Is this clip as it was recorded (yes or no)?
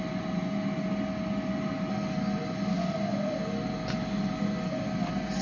yes